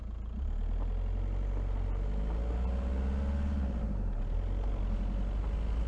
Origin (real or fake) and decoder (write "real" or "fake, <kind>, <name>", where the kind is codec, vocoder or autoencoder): real